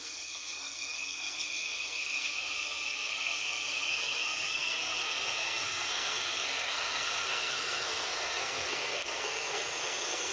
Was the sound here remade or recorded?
remade